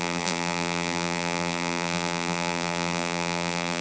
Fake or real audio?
fake